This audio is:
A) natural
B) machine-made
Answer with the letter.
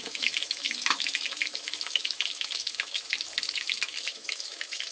B